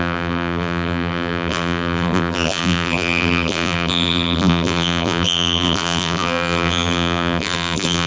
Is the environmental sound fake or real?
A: fake